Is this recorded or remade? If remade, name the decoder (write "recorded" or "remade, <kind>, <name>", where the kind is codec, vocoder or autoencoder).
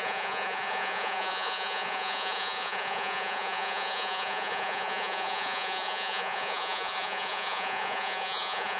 remade, vocoder, Vocos